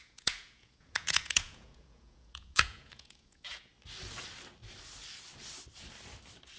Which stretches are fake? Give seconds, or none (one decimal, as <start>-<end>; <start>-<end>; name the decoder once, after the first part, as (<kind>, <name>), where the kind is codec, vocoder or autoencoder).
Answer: 0.0-3.7 (vocoder, Vocos)